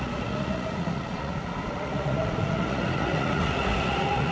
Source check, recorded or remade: remade